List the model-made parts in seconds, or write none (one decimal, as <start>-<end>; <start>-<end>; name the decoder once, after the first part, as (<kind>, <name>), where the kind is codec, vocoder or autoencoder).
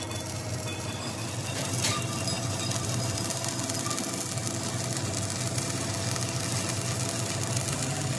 none